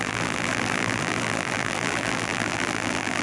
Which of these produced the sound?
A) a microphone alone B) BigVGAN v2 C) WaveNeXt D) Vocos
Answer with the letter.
B